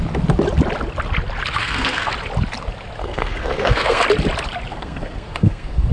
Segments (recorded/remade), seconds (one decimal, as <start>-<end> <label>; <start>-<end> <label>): 0.0-1.6 recorded; 1.6-2.1 remade; 2.1-3.0 recorded; 3.0-4.0 remade; 4.0-4.7 recorded; 4.7-5.9 remade